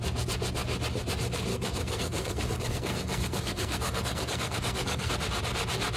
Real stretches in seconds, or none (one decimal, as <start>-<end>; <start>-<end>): 0.0-1.5; 5.1-6.0